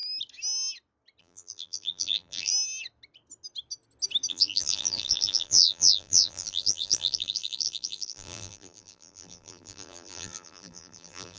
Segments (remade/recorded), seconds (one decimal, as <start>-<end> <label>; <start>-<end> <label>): 0.0-1.2 recorded; 1.2-2.5 remade; 2.5-4.3 recorded; 4.3-11.4 remade